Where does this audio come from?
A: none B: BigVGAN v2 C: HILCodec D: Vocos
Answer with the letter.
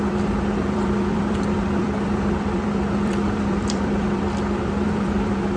B